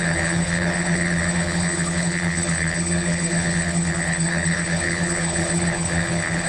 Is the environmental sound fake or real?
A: fake